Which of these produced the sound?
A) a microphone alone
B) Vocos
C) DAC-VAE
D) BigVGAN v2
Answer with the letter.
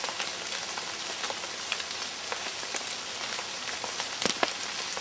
A